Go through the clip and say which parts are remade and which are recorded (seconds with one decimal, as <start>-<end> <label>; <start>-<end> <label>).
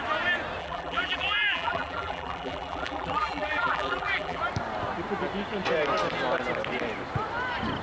0.0-0.6 recorded; 0.6-4.4 remade; 4.4-7.8 recorded